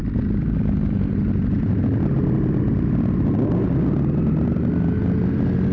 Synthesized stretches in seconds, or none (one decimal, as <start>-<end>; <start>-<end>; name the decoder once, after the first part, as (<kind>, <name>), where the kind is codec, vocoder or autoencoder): none